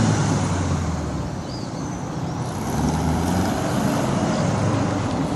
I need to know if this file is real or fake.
real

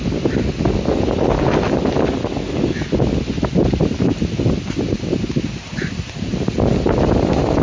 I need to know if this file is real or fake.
real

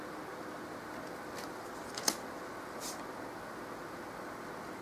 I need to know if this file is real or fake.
real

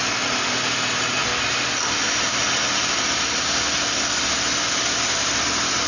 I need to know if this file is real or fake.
real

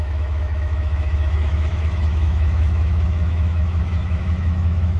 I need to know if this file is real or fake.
fake